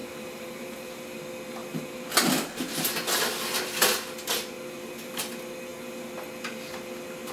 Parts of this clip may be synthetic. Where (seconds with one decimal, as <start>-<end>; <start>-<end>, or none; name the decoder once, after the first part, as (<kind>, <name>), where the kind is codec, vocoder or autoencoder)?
0.0-1.2 (vocoder, BigVGAN v2)